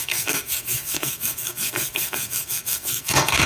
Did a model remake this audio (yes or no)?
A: yes